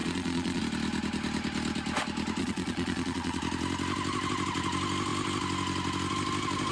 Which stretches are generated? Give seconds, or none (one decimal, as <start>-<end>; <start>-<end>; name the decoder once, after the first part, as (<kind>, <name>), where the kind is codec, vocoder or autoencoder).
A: 0.0-0.6 (vocoder, Vocos); 2.4-3.4

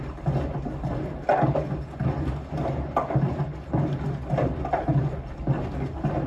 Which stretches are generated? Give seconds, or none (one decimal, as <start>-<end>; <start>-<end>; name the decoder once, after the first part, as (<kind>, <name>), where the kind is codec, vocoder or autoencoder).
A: 4.9-5.7 (vocoder, BigVGAN v2)

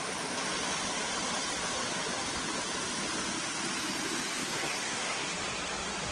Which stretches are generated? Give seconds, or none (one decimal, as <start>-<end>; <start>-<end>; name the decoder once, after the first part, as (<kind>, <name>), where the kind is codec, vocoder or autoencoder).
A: 4.4-5.3 (codec, SNAC)

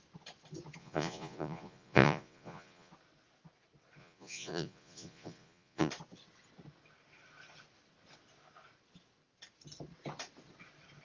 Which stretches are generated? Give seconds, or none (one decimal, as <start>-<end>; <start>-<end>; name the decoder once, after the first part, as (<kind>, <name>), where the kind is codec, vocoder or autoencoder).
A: 0.8-2.9 (vocoder, Vocos); 4.0-5.9

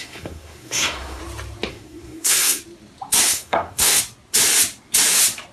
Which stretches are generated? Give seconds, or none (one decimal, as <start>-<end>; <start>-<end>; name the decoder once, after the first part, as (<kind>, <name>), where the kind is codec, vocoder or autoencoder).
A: 0.0-1.2 (codec, SNAC); 1.7-2.6; 3.3-4.0

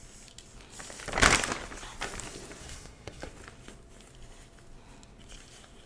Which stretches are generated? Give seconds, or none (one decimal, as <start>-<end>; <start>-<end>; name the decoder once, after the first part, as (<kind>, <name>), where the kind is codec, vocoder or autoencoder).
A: 2.6-3.3 (codec, SNAC)